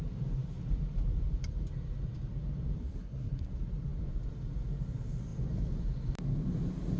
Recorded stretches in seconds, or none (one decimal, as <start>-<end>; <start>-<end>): 0.0-2.8; 3.5-7.0